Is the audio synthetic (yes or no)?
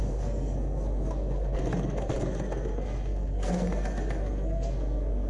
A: yes